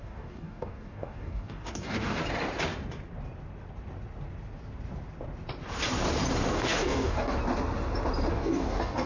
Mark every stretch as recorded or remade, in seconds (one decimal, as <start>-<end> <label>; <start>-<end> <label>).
0.0-2.2 remade; 2.2-6.5 recorded; 6.5-7.4 remade; 7.4-8.3 recorded; 8.3-9.1 remade